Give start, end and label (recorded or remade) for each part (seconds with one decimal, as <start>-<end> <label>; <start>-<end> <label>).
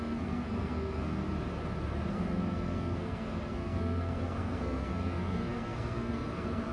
0.0-1.2 remade; 1.2-2.1 recorded; 2.1-6.7 remade